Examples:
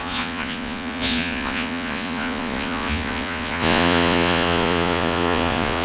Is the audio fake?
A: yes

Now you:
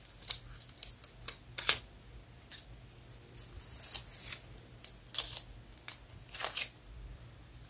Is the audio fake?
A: no